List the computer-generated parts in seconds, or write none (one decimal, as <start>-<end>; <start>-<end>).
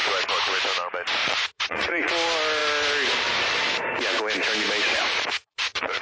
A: 1.2-2.1; 4.9-6.0